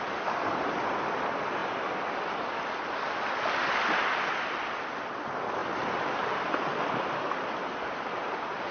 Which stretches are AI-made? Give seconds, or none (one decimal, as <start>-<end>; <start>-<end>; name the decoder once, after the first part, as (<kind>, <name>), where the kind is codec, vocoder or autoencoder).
none